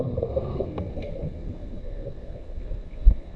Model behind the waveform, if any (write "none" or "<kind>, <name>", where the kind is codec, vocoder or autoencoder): codec, SNAC